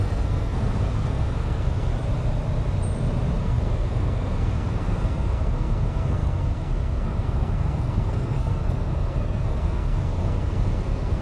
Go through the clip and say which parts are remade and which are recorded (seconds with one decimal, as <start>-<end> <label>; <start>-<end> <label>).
0.0-1.9 remade; 1.9-3.4 recorded; 3.4-11.2 remade